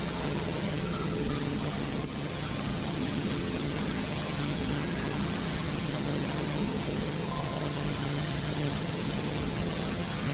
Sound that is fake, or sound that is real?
fake